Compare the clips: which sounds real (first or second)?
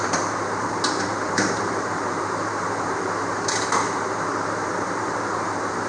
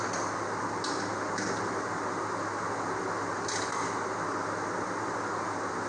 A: second